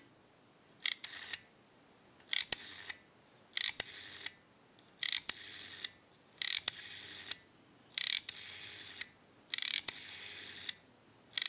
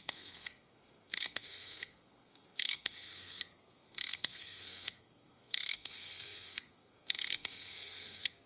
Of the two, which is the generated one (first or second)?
second